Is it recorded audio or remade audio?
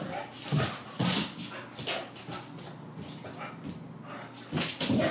recorded